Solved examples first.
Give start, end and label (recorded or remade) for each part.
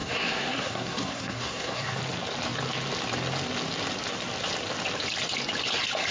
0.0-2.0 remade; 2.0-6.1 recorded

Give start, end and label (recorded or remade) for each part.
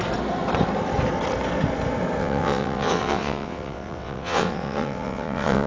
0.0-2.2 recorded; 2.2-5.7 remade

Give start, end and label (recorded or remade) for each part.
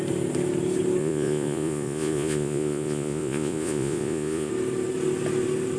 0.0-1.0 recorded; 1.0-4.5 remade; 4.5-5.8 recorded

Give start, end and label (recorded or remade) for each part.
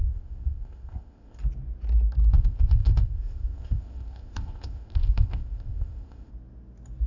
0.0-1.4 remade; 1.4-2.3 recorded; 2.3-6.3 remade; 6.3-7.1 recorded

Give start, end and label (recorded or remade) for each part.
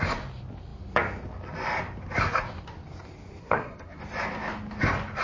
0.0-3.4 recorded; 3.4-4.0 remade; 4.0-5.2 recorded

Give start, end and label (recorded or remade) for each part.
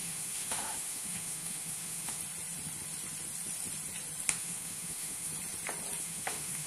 0.0-2.2 remade; 2.2-4.3 recorded; 4.3-5.3 remade; 5.3-6.0 recorded; 6.0-6.7 remade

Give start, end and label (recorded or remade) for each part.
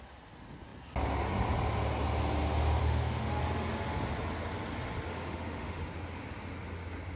0.0-2.8 recorded; 2.8-3.4 remade; 3.4-5.1 recorded; 5.1-5.8 remade; 5.8-7.2 recorded